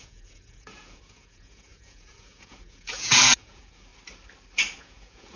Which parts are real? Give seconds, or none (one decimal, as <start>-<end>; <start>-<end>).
3.9-4.8